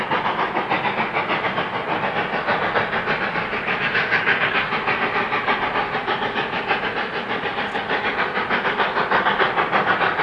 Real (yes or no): yes